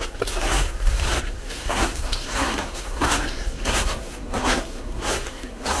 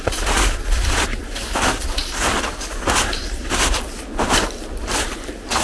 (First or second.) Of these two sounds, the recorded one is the second